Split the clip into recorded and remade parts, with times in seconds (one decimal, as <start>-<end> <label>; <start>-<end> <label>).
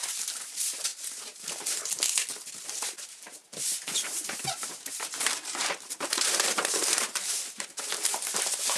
0.0-0.9 remade; 0.9-2.6 recorded; 2.6-8.8 remade